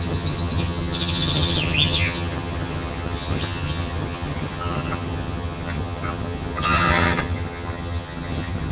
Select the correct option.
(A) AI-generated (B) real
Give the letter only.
A